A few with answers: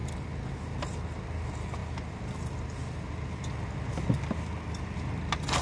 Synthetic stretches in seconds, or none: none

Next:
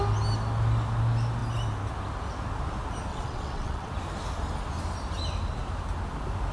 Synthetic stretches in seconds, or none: 3.1-3.9 (vocoder, WaveNeXt)

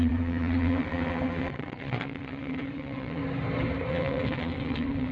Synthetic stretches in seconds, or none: 0.0-3.2 (vocoder, WaveNeXt); 3.9-5.1

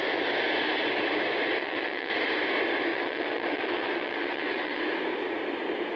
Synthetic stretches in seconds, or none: 1.6-2.1 (vocoder, WaveNeXt); 2.9-4.8

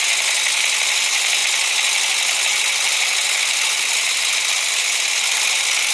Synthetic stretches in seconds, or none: none

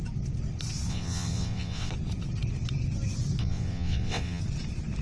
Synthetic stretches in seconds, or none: 0.9-1.9 (vocoder, WaveNeXt); 3.4-4.4

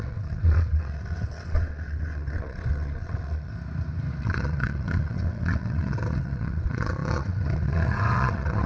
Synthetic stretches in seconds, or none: 0.0-3.5 (vocoder, WaveNeXt); 4.2-8.7

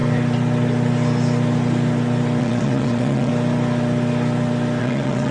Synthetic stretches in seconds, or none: 2.4-3.3 (vocoder, WaveNeXt); 4.8-5.3